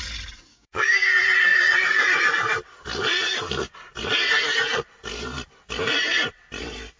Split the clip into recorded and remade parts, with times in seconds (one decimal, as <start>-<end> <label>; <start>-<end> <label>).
0.0-0.5 recorded; 0.5-1.1 remade; 1.1-7.0 recorded